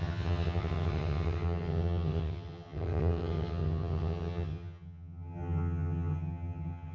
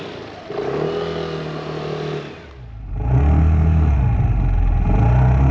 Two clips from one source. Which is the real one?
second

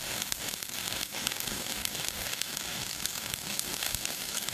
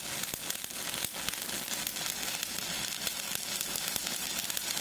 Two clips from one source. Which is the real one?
second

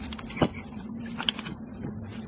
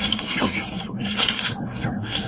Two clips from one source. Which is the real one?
first